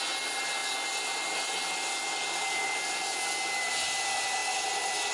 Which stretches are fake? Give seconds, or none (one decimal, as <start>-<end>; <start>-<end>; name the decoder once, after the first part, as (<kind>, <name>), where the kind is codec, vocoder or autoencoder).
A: none